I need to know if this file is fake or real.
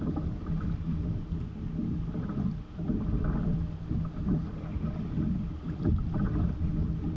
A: real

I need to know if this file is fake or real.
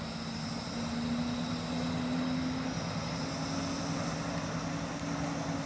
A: fake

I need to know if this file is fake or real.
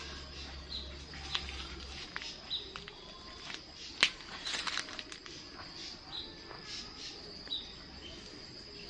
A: real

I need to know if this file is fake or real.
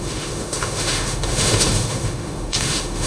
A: fake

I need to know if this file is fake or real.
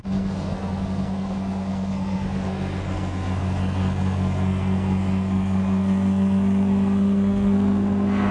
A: fake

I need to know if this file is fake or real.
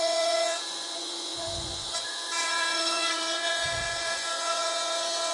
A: fake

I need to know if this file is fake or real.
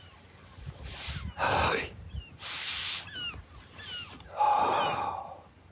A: real